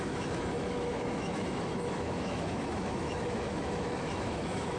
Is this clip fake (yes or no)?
yes